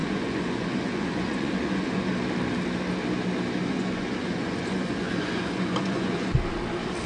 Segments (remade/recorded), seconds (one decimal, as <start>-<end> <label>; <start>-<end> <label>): 0.0-2.1 remade; 2.1-3.6 recorded; 3.6-6.4 remade; 6.4-7.1 recorded